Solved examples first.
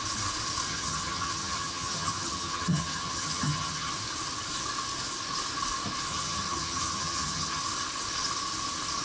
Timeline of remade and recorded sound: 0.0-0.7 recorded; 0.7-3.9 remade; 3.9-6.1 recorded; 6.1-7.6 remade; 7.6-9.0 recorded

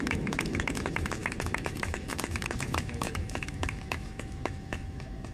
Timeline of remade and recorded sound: 0.0-5.3 remade

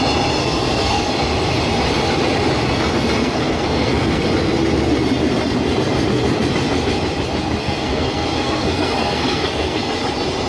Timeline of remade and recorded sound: 0.0-0.4 recorded; 0.4-1.1 remade; 1.1-3.2 recorded; 3.2-4.2 remade; 4.2-7.6 recorded; 7.6-9.9 remade; 9.9-10.5 recorded

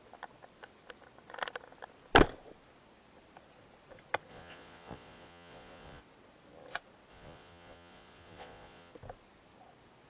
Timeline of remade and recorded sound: 0.0-4.3 recorded; 4.3-6.0 remade; 6.0-7.1 recorded; 7.1-8.9 remade; 8.9-10.1 recorded

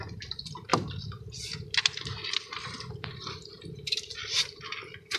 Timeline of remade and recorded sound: 0.0-5.2 remade

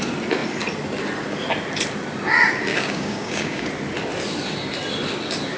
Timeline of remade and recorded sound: 0.0-2.7 recorded; 2.7-3.7 remade; 3.7-5.6 recorded